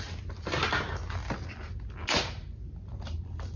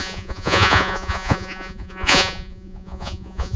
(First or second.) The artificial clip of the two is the second